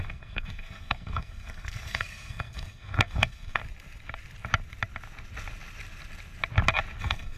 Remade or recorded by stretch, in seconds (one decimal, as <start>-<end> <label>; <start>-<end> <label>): 0.0-3.6 remade; 3.6-7.0 recorded; 7.0-7.4 remade